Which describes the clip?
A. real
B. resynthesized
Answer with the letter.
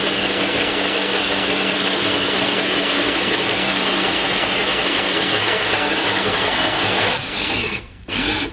B